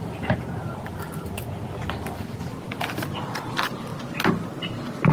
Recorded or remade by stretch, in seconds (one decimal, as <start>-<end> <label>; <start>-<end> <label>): 0.0-5.1 recorded